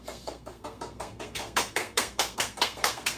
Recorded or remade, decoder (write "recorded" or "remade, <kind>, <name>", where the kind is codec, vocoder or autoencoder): remade, codec, SNAC